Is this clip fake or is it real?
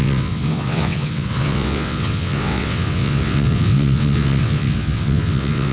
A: fake